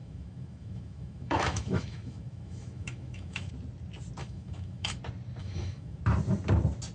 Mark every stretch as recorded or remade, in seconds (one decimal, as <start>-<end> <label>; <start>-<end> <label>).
0.0-3.5 remade; 3.5-4.2 recorded; 4.2-5.0 remade; 5.0-5.4 recorded; 5.4-6.0 remade; 6.0-6.9 recorded